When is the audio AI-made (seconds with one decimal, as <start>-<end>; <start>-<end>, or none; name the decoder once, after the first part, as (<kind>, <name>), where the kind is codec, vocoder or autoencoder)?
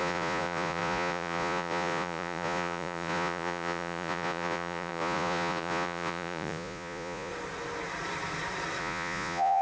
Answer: 0.0-7.3 (vocoder, Vocos); 8.8-9.6